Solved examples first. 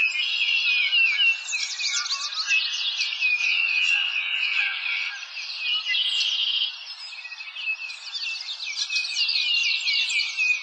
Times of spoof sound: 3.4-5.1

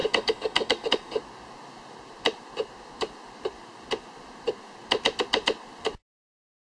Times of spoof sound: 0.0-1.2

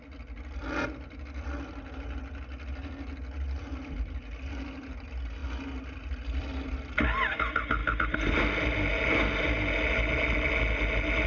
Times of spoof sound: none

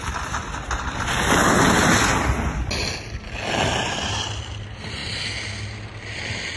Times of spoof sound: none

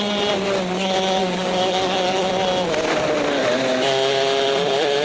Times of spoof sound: 1.2-2.3

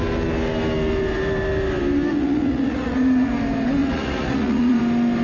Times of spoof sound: 2.1-3.3; 3.8-4.8

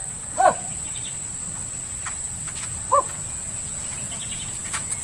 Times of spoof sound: 3.0-5.0